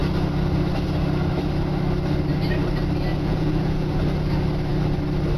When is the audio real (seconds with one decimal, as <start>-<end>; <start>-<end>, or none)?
0.0-3.1; 4.0-5.4